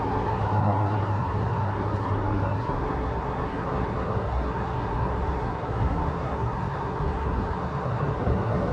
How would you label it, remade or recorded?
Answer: remade